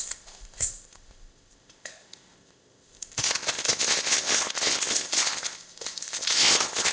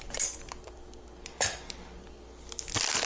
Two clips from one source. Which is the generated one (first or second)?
first